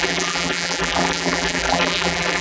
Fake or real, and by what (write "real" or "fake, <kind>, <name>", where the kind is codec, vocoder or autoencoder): fake, vocoder, BigVGAN v2